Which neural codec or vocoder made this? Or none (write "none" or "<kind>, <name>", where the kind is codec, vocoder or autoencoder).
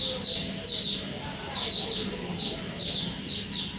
none